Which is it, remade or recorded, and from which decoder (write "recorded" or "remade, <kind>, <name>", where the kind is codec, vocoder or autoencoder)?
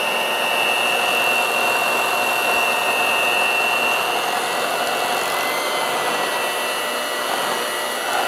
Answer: recorded